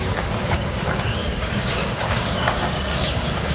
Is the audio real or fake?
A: fake